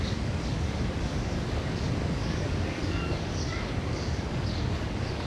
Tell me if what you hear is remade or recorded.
remade